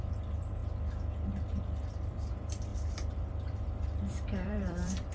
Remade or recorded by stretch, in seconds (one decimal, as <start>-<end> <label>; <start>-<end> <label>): 0.0-0.6 remade; 0.6-1.8 recorded; 1.8-5.1 remade